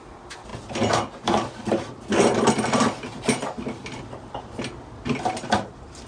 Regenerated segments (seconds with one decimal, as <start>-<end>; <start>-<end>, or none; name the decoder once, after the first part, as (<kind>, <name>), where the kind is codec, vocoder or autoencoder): none